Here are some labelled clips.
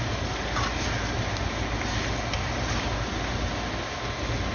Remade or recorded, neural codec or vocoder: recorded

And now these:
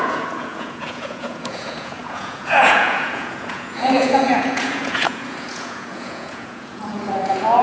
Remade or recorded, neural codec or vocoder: remade, vocoder, Vocos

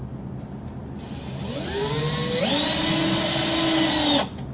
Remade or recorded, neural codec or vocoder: recorded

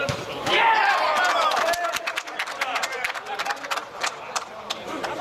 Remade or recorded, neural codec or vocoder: remade, vocoder, BigVGAN v2